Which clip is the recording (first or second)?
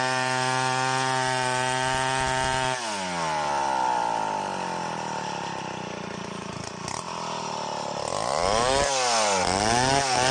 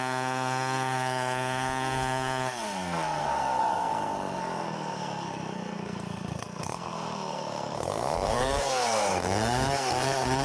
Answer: first